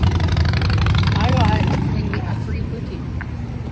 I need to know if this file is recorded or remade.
remade